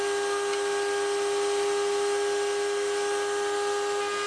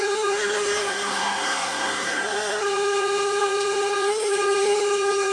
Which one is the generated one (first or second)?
second